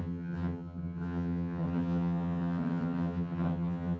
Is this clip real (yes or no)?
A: no